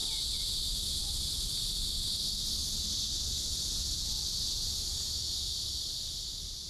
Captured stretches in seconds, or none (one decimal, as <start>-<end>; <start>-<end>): 0.0-6.7